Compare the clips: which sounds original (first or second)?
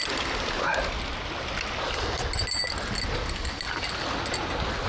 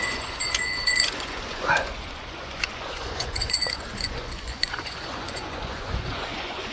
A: first